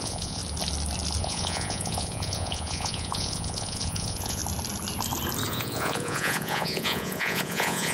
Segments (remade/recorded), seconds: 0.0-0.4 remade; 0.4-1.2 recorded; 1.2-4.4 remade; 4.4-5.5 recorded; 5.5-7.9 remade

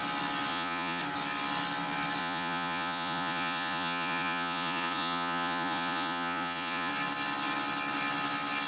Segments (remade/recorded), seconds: 0.0-0.5 recorded; 0.5-1.0 remade; 1.0-2.2 recorded; 2.2-6.9 remade; 6.9-8.7 recorded

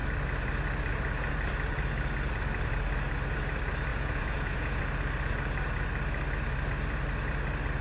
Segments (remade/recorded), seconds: 0.0-3.9 recorded; 3.9-4.8 remade; 4.8-7.8 recorded

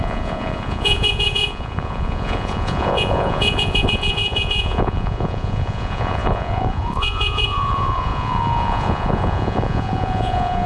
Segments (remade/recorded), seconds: 0.0-10.7 remade